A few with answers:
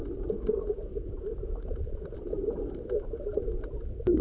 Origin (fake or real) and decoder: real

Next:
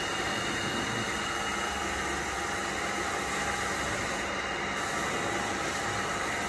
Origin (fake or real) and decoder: real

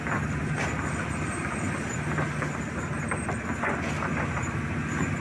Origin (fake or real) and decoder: real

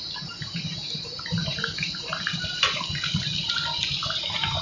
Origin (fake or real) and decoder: fake, vocoder, BigVGAN v2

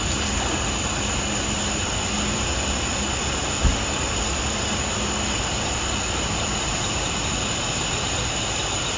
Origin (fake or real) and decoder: real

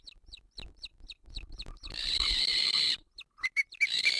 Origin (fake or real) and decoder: fake, vocoder, BigVGAN v2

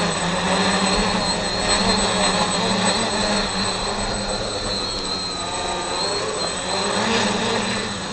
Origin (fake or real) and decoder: real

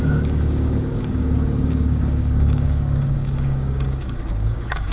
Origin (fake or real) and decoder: fake, codec, DAC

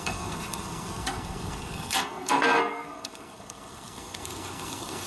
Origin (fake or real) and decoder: fake, codec, SNAC